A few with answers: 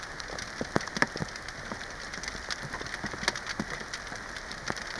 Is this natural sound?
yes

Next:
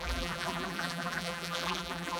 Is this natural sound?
no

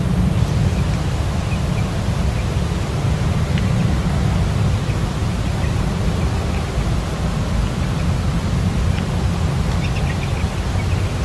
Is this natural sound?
yes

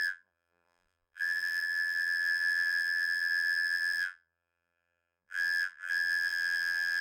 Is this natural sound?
no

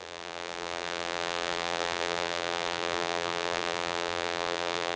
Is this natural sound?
no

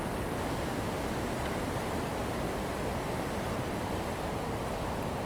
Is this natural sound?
no